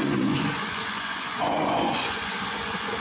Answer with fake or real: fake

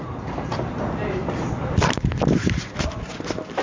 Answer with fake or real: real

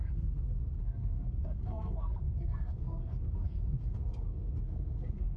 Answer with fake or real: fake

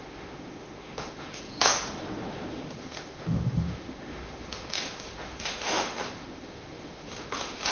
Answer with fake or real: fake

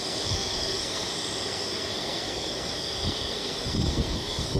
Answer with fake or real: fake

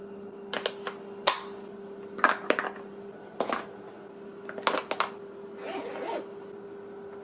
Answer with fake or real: real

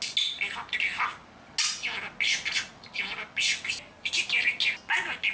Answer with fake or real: real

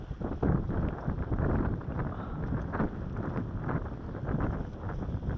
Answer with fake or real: real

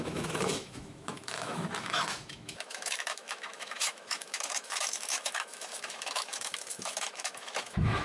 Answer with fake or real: fake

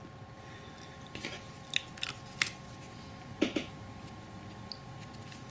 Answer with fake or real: real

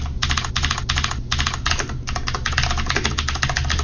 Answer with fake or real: real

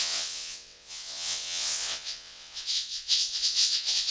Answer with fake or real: fake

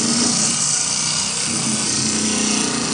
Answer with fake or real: real